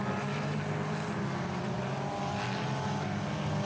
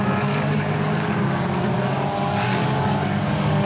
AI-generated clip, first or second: second